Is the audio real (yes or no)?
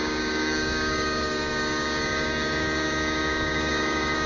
no